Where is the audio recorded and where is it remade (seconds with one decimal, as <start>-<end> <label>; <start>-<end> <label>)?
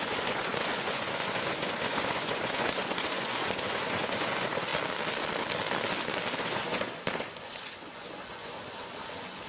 0.0-4.7 remade; 4.7-6.4 recorded; 6.4-9.5 remade